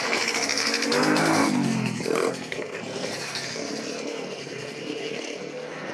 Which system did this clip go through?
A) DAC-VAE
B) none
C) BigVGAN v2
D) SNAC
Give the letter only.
D